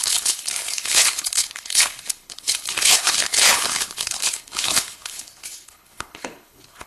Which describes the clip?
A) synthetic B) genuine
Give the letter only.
A